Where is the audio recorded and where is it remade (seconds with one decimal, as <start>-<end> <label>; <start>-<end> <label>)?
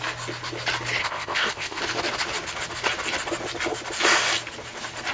0.0-1.0 recorded; 1.0-1.8 remade; 1.8-5.1 recorded